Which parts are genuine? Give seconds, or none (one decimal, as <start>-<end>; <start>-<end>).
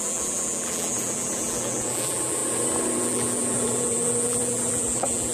2.4-3.0